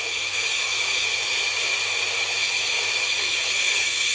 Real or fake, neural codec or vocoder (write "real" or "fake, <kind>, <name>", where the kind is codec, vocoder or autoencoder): fake, autoencoder, DAC-VAE